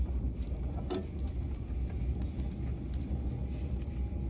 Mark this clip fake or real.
real